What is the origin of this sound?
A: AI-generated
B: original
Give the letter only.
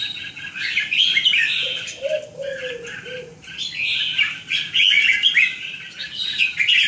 B